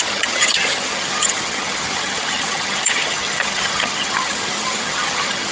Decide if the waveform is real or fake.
fake